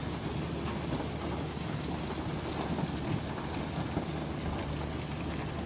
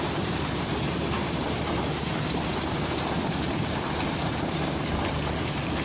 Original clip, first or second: first